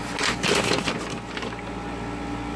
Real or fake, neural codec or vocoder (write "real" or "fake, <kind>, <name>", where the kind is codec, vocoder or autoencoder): real